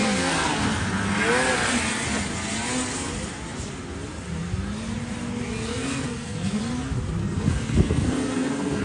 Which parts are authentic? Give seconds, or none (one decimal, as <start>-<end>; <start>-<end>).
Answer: 0.6-5.7; 6.6-7.2